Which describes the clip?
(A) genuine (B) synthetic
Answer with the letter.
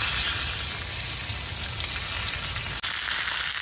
A